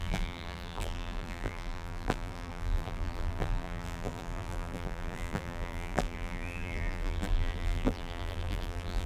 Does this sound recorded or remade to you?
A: remade